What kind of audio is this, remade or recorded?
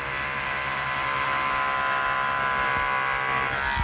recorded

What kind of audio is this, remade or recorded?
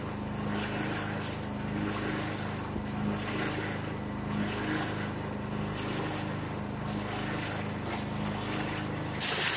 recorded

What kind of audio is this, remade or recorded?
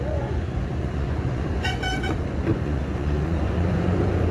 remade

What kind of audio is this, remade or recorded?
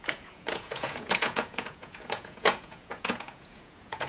remade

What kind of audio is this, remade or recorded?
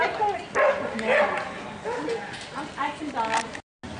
recorded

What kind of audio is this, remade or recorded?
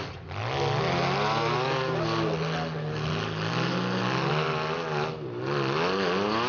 recorded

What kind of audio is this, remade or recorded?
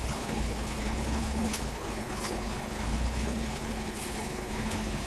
remade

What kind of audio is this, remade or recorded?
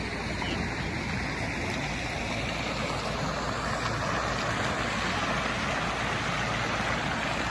recorded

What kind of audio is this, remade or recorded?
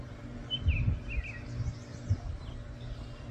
recorded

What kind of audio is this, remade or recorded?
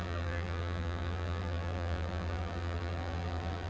remade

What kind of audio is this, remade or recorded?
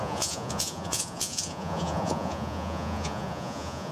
remade